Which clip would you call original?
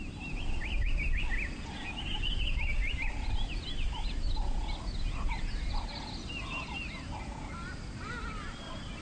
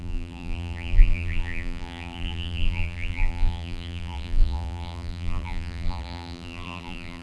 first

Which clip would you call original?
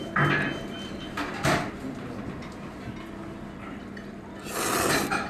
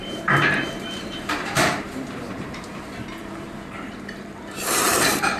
first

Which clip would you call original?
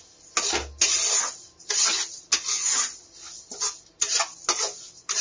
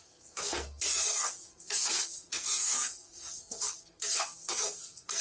first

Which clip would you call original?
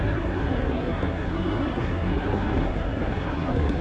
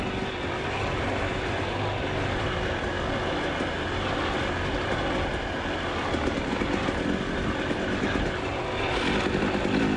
second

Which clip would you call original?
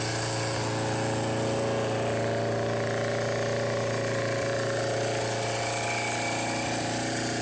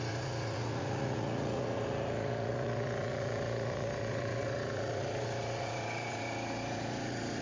first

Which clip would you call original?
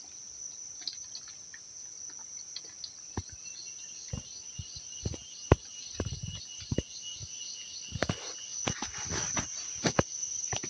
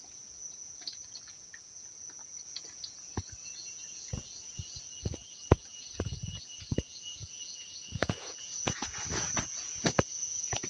first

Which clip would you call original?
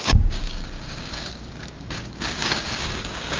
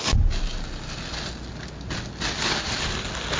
second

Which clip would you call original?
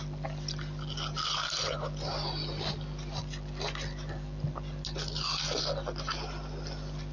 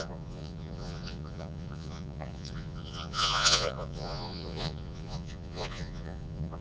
first